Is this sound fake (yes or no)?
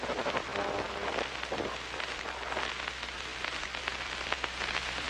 no